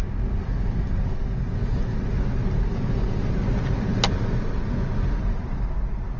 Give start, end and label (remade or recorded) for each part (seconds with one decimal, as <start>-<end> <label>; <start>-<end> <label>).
0.0-6.2 recorded